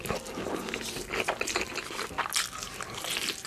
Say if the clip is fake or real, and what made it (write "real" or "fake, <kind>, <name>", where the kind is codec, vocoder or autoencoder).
real